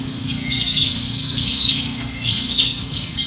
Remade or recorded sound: remade